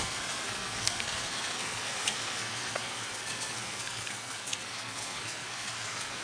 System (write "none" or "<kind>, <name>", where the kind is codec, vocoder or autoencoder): codec, SNAC